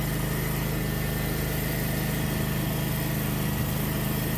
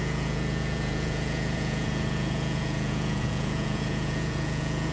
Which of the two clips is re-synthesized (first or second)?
second